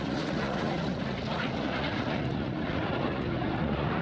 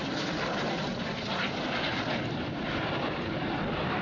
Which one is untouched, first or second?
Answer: second